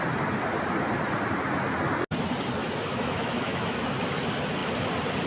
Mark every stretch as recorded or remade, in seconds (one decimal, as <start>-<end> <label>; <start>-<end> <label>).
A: 0.0-2.6 recorded; 2.6-3.9 remade; 3.9-5.3 recorded